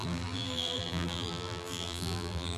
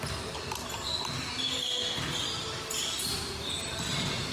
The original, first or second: second